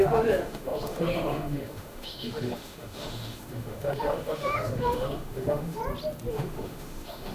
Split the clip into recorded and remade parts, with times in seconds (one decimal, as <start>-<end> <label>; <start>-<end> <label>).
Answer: 0.0-5.8 remade; 5.8-6.3 recorded; 6.3-7.3 remade